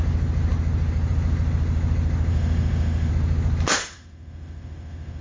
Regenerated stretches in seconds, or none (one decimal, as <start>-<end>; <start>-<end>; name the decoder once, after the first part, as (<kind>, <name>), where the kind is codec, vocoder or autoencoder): 2.3-3.1 (autoencoder, DAC-VAE); 3.8-5.2